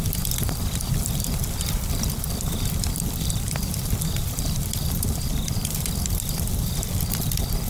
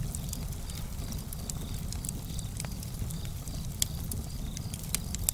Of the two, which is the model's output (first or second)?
first